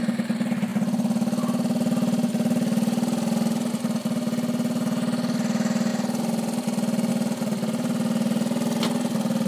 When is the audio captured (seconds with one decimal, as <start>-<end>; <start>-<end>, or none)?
0.0-9.5